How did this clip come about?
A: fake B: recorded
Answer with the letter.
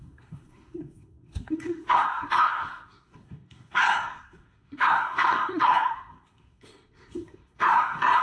A